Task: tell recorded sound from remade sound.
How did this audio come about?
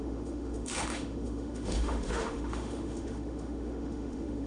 remade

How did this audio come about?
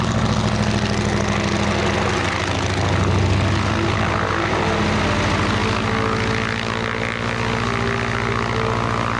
recorded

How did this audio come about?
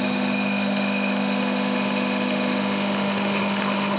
remade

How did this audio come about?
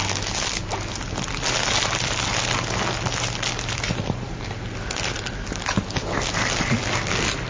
recorded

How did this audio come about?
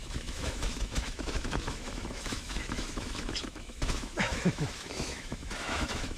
remade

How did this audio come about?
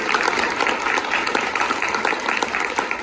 recorded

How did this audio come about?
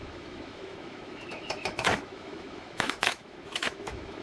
remade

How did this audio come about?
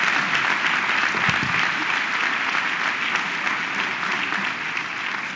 recorded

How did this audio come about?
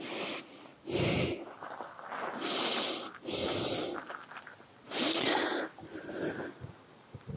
recorded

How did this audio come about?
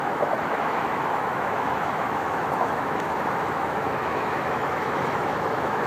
remade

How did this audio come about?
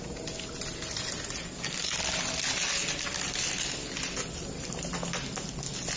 recorded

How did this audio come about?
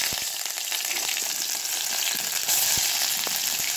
recorded